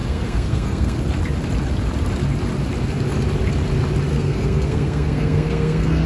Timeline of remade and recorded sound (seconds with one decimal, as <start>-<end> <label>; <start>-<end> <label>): 0.0-1.0 remade; 1.0-4.1 recorded; 4.1-6.1 remade